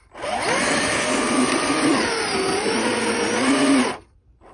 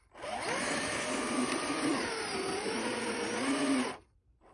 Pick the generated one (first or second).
second